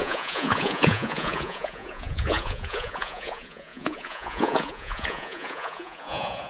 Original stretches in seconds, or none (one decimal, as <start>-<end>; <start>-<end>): none